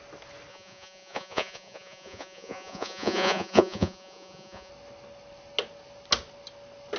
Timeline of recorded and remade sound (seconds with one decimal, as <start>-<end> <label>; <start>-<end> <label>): 0.0-0.5 recorded; 0.5-4.7 remade; 4.7-7.0 recorded